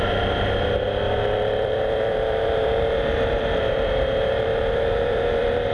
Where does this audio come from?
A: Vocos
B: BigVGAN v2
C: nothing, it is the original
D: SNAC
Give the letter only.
B